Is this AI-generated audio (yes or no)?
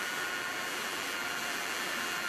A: yes